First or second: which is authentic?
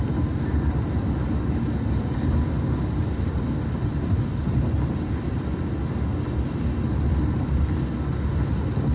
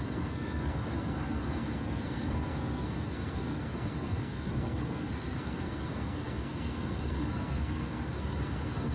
first